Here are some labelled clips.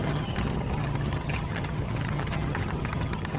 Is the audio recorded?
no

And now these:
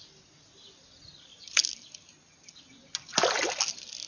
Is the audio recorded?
yes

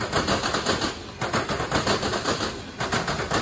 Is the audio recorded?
yes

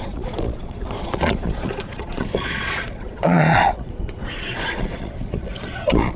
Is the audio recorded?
no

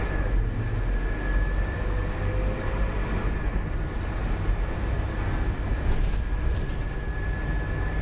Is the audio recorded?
yes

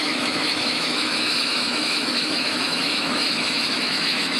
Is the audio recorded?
no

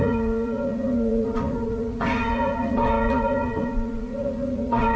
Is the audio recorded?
no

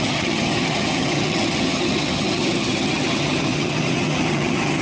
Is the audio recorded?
no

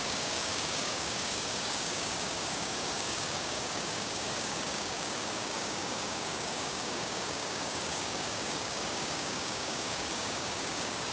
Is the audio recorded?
no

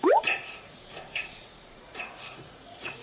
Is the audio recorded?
no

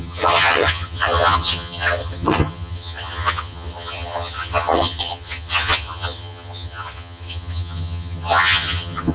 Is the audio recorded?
no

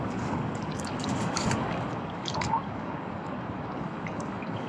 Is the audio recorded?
no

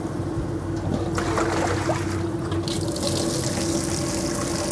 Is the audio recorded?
yes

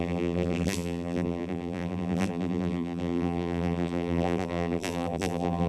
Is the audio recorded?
no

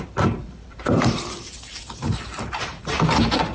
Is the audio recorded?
no